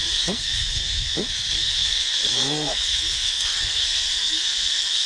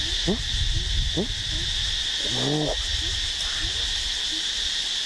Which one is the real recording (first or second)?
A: second